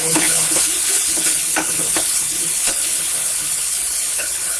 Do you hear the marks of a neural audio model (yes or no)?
yes